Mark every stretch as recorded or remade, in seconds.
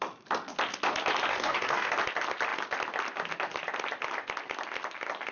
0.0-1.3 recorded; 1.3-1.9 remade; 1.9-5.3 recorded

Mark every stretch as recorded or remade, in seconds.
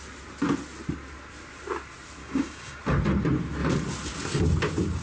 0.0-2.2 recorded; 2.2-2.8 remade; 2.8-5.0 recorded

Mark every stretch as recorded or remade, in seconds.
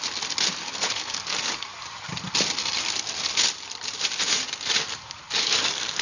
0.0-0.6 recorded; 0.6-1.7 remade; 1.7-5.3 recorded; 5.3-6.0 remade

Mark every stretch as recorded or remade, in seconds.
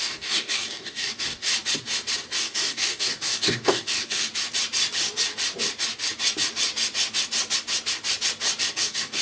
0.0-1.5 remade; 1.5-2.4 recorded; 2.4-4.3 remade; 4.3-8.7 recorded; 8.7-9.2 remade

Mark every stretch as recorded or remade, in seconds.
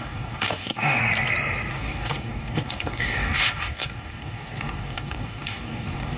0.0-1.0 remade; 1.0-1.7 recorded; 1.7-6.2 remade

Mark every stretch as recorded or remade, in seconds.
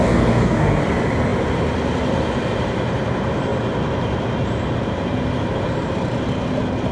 0.0-0.8 remade; 0.8-6.9 recorded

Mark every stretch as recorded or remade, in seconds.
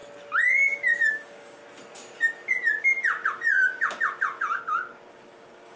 0.0-1.1 recorded; 1.1-1.6 remade; 1.6-5.1 recorded; 5.1-5.8 remade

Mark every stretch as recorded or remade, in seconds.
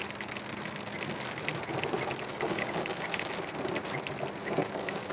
0.0-2.3 recorded; 2.3-3.3 remade; 3.3-4.4 recorded; 4.4-5.1 remade